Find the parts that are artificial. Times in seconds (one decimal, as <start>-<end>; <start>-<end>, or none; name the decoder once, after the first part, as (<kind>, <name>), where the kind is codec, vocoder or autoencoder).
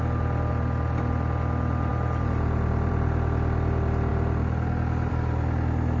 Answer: none